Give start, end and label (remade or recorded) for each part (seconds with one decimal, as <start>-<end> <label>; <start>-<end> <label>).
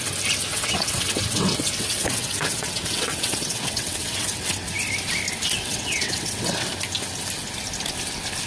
0.0-0.5 recorded; 0.5-4.7 remade; 4.7-5.5 recorded; 5.5-6.7 remade; 6.7-8.5 recorded